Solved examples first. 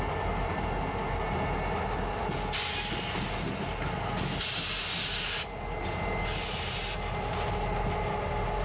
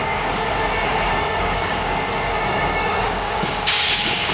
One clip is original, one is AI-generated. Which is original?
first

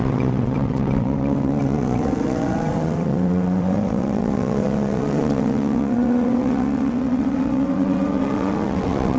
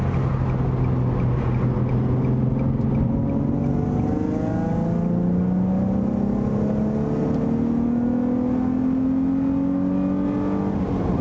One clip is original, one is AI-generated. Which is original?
second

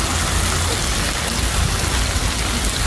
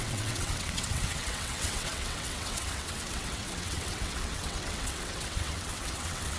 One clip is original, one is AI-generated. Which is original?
first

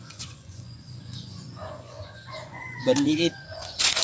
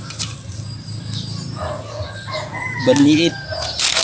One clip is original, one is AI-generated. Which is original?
second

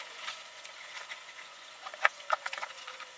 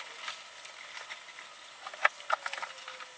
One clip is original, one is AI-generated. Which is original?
second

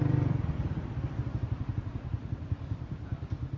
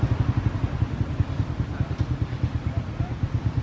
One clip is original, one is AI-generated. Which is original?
second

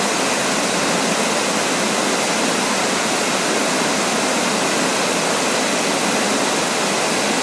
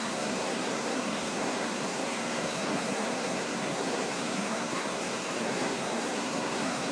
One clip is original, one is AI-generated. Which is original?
first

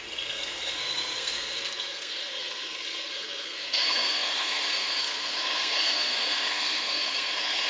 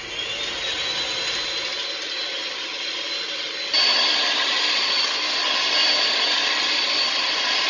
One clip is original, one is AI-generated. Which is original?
second